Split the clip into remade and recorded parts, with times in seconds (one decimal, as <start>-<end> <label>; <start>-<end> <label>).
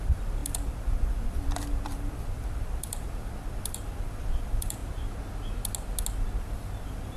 0.0-4.8 remade; 4.8-6.4 recorded; 6.4-7.2 remade